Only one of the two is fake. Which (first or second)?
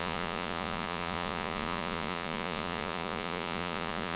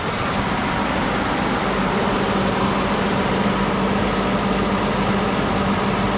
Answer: first